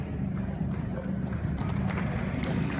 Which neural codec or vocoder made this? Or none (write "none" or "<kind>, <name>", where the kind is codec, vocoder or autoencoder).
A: vocoder, BigVGAN v2